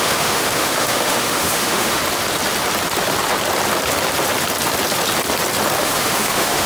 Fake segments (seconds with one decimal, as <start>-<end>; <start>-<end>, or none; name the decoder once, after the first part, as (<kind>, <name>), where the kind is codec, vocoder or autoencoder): 0.0-2.0 (autoencoder, DAC-VAE); 5.8-6.7